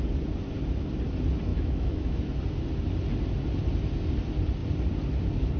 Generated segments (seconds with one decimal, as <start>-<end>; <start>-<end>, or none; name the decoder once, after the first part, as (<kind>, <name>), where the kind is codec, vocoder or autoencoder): 1.5-2.2 (autoencoder, DAC-VAE)